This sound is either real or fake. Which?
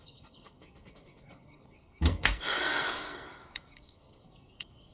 fake